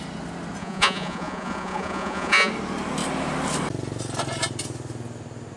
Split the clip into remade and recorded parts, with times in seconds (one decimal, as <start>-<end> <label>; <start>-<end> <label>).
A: 0.0-0.6 recorded; 0.6-2.5 remade; 2.5-5.6 recorded